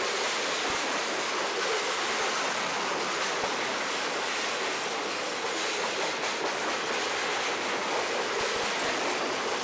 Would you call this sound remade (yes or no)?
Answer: no